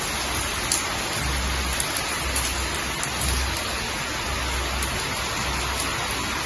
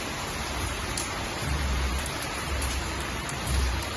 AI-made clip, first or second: second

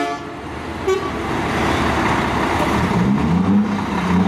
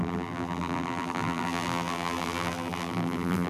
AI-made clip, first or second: second